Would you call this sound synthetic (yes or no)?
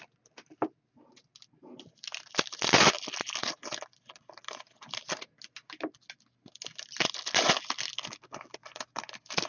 no